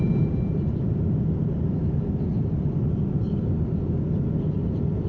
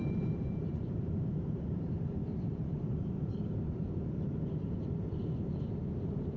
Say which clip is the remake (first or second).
second